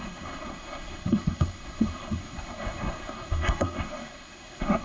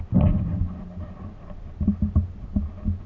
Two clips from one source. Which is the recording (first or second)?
second